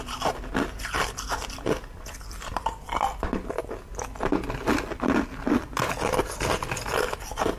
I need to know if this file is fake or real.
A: real